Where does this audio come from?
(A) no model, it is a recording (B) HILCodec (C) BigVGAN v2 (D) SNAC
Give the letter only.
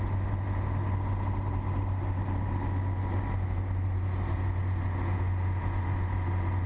A